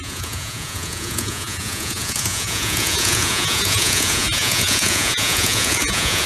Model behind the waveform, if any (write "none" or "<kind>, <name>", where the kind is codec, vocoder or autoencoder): vocoder, Vocos